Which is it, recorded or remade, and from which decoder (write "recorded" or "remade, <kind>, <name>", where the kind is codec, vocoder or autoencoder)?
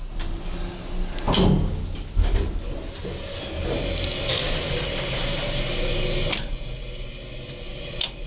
recorded